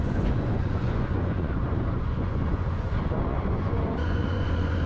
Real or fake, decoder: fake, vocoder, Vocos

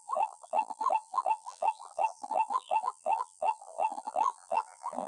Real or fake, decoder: fake, vocoder, BigVGAN v2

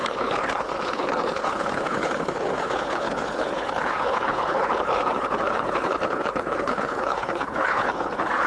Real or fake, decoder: fake, codec, HILCodec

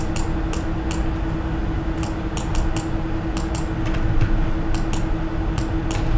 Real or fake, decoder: real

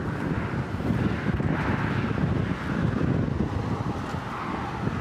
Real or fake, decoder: real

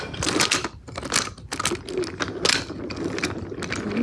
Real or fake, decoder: real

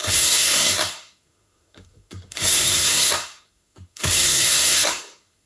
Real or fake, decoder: fake, codec, SNAC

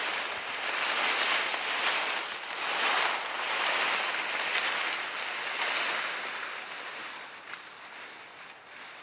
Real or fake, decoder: real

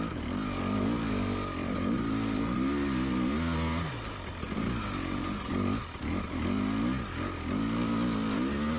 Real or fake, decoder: real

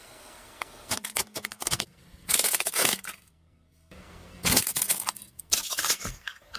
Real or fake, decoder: fake, codec, SNAC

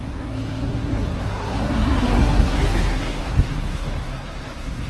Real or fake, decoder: fake, codec, SNAC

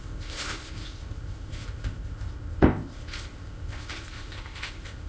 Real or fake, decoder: fake, codec, ZipCodec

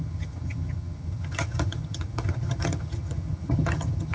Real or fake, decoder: fake, vocoder, HiFi-GAN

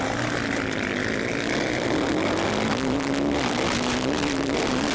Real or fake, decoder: real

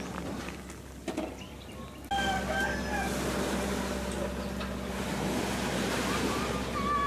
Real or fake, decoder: real